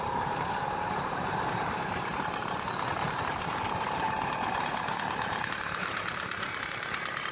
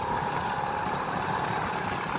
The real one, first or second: second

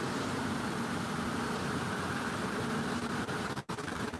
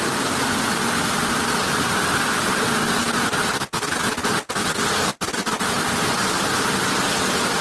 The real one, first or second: second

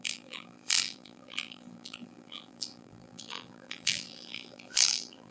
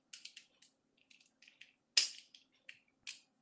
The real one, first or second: second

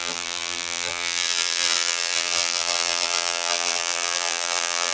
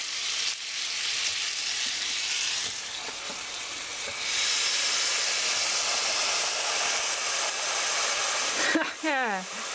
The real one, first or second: second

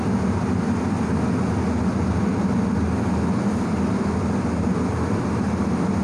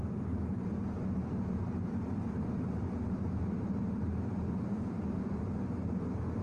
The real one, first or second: first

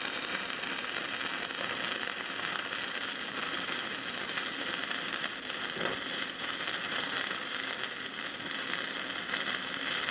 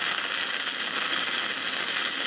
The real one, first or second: second